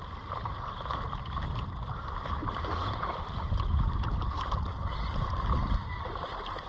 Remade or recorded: recorded